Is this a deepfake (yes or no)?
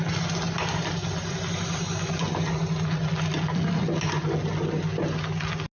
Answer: no